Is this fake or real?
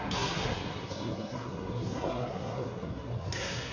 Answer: fake